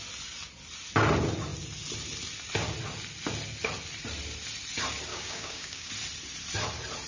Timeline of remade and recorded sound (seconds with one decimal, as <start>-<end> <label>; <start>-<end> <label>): 0.0-5.1 recorded; 5.1-5.9 remade; 5.9-7.1 recorded